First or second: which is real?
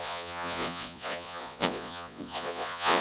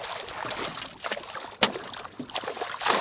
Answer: second